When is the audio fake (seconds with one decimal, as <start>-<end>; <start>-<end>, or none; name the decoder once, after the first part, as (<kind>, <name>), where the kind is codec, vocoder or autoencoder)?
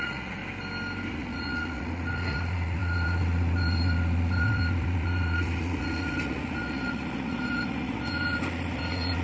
0.0-0.4 (vocoder, Vocos); 1.1-9.2